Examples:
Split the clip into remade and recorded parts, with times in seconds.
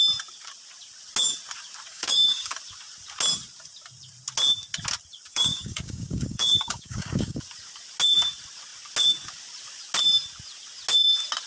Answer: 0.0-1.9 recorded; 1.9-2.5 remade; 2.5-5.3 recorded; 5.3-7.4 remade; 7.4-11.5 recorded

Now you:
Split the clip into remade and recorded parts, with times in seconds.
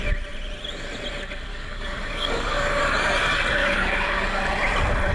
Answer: 0.0-1.5 recorded; 1.5-2.8 remade; 2.8-3.6 recorded; 3.6-4.4 remade; 4.4-5.1 recorded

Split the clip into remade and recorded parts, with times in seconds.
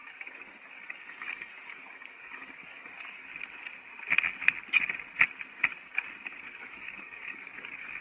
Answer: 0.0-3.3 remade; 3.3-6.6 recorded; 6.6-8.0 remade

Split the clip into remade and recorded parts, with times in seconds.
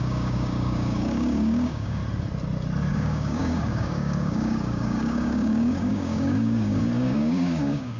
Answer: 0.0-2.0 remade; 2.0-2.9 recorded; 2.9-8.0 remade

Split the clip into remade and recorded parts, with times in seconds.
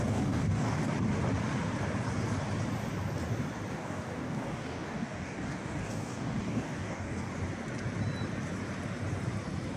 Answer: 0.0-0.8 remade; 0.8-3.7 recorded; 3.7-7.3 remade; 7.3-9.8 recorded